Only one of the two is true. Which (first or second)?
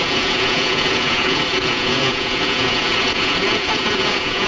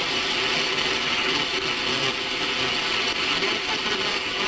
second